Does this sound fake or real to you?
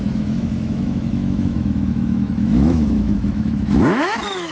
fake